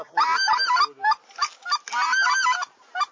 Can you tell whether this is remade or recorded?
recorded